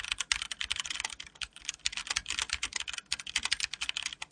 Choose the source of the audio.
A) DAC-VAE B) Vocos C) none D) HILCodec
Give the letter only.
C